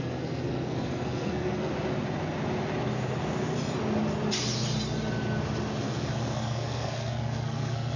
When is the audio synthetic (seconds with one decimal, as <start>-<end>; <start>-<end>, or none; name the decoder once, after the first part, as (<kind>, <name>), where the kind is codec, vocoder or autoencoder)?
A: 0.0-1.7 (codec, SNAC); 5.8-8.0